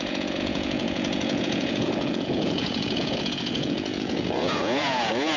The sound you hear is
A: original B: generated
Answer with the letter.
B